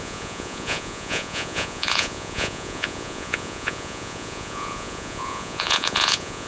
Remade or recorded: remade